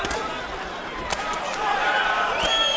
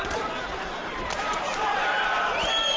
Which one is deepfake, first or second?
second